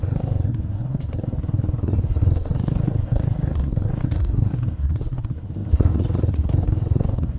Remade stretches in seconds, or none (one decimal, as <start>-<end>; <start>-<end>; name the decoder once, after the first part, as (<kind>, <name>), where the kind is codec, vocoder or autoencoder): 0.0-7.4 (codec, SNAC)